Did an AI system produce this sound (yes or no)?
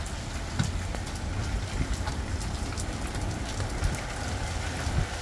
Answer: no